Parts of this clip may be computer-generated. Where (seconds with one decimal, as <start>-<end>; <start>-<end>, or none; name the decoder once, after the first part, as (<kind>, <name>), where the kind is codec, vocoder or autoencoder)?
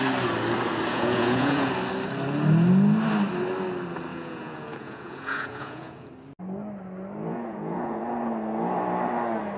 0.9-1.7 (vocoder, Vocos); 4.1-6.1; 7.3-8.0